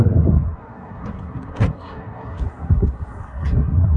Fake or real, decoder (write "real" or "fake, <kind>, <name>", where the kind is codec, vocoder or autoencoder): fake, codec, SNAC